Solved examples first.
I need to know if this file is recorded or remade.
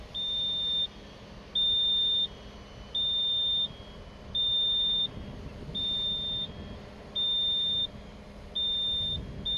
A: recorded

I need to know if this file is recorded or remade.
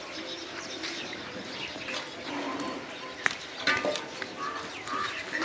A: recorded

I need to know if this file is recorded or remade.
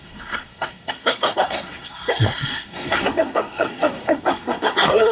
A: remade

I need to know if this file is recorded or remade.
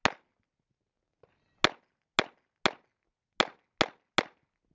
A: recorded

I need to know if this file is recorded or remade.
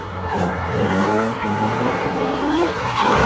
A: remade